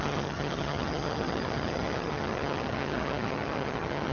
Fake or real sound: fake